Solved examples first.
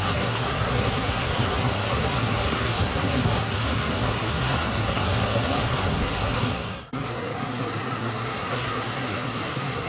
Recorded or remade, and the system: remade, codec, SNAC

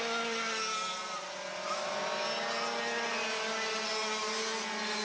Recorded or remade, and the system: recorded